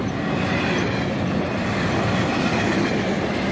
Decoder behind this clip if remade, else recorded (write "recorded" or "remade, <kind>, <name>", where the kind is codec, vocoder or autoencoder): recorded